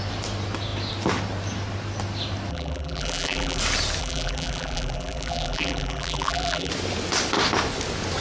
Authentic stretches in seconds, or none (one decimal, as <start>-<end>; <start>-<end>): 0.0-2.5; 3.6-4.0; 6.7-8.2